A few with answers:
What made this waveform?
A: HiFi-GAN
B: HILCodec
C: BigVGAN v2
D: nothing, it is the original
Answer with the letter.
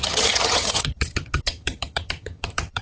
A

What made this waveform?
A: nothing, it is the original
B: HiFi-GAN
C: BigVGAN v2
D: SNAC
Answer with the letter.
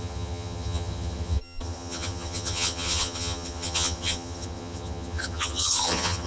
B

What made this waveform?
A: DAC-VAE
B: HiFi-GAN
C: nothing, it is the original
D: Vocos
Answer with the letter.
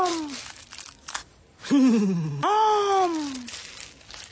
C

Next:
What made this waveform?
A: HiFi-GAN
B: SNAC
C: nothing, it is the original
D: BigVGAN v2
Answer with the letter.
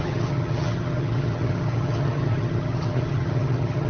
A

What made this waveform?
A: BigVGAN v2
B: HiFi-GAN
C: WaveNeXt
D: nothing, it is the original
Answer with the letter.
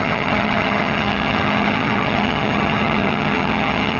B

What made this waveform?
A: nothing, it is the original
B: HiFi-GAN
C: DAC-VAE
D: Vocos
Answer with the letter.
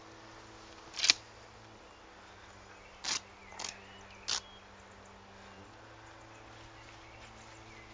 A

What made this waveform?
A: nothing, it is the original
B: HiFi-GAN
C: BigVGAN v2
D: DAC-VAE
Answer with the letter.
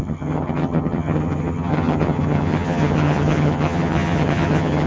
B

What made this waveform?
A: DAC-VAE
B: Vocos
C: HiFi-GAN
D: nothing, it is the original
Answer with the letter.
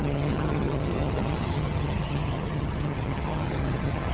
C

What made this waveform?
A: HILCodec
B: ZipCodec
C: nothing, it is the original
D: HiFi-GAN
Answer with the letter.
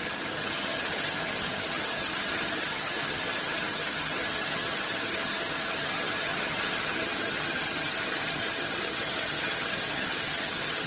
D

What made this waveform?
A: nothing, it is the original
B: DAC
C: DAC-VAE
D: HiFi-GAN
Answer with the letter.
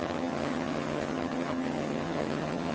D